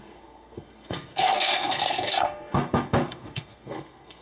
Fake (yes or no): yes